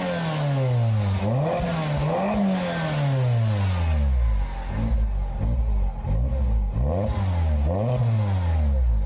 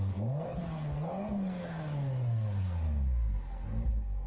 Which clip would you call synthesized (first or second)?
second